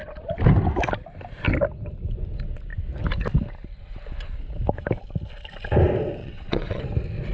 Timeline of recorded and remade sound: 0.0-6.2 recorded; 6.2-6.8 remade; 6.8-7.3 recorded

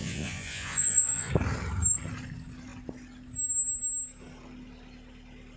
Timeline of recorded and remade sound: 0.0-1.3 remade; 1.3-5.6 recorded

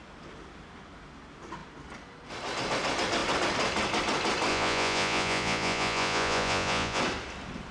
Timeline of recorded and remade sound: 0.0-4.5 recorded; 4.5-7.0 remade; 7.0-7.7 recorded

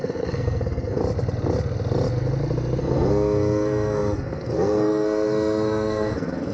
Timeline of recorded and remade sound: 0.0-1.0 remade; 1.0-2.8 recorded; 2.8-6.5 remade

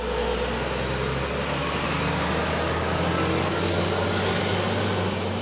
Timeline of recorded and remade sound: 0.0-1.6 recorded; 1.6-4.4 remade; 4.4-5.4 recorded

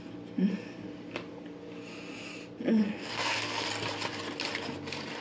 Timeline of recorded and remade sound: 0.0-2.8 recorded; 2.8-3.7 remade; 3.7-5.2 recorded

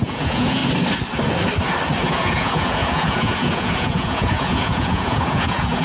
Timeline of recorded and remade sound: 0.0-0.6 remade; 0.6-2.0 recorded; 2.0-5.8 remade

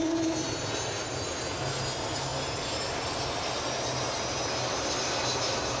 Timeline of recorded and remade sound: 0.0-5.8 recorded